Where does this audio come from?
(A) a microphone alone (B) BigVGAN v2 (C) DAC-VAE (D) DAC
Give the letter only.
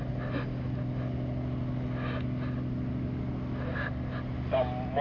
A